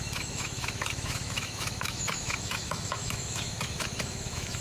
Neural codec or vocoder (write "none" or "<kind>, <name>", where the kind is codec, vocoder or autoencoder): autoencoder, DAC-VAE